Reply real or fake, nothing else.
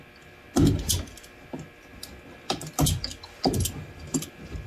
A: real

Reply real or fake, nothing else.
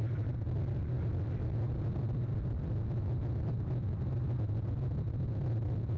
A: fake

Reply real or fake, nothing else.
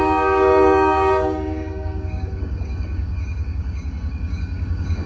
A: fake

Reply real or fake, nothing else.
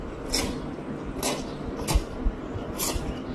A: real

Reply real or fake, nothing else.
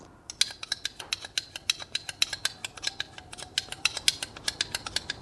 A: real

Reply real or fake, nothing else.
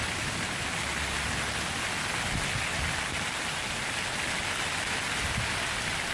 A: real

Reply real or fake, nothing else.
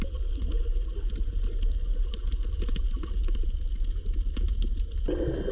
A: real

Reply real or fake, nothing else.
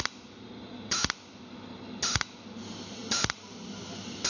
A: real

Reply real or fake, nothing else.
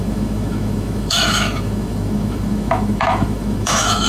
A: fake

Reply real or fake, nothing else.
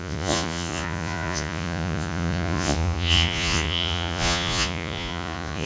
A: fake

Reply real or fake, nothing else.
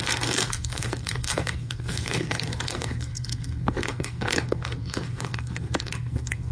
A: fake